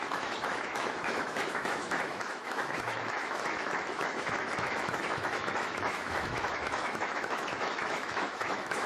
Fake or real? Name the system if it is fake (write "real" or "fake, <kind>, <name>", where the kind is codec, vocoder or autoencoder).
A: fake, autoencoder, DAC-VAE